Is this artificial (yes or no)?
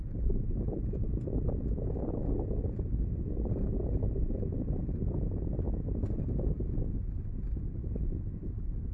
no